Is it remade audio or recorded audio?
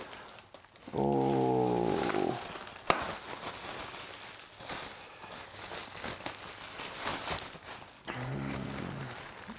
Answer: recorded